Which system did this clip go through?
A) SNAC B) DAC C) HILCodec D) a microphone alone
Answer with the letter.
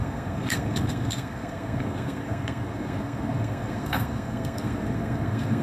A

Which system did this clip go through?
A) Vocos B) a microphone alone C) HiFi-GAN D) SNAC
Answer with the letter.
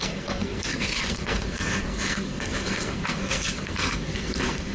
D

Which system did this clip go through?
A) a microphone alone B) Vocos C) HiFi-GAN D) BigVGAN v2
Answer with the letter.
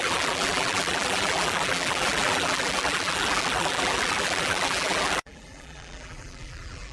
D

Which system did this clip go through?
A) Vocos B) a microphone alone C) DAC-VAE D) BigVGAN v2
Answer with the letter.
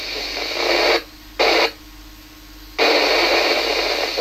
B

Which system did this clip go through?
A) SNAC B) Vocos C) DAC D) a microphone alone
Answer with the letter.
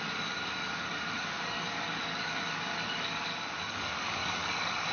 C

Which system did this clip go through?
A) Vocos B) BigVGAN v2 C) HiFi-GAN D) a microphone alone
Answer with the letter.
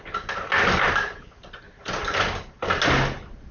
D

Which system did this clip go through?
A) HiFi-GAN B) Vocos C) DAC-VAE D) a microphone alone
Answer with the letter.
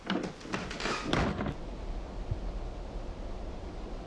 D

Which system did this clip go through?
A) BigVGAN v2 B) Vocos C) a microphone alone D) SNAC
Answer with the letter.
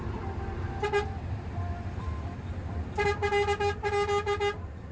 C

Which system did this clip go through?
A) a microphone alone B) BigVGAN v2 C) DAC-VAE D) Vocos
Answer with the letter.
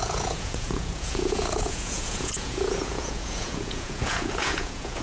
D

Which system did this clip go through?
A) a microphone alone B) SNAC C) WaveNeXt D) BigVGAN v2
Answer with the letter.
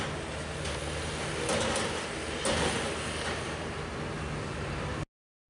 A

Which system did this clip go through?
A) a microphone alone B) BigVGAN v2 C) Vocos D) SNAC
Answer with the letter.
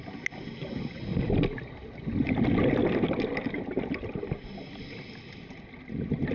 A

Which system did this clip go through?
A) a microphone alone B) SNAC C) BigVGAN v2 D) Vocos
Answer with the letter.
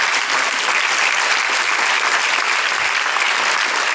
A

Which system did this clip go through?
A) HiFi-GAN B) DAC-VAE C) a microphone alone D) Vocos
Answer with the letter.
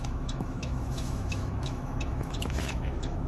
B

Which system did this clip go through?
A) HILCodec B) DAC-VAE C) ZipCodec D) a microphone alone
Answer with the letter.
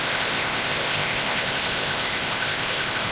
C